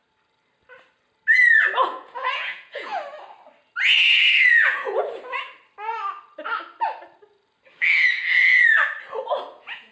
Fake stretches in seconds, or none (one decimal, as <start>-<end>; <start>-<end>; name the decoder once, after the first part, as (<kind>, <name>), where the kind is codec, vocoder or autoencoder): 1.9-2.9 (vocoder, Vocos); 4.5-5.0; 9.5-9.9